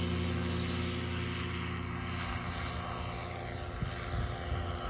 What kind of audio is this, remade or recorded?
recorded